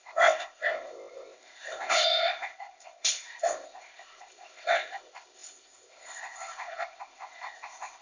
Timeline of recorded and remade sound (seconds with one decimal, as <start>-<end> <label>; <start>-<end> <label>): 0.0-8.0 remade